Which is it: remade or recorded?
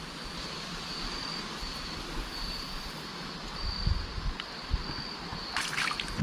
recorded